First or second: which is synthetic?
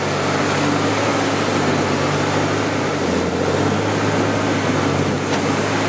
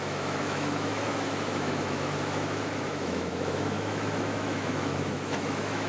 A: second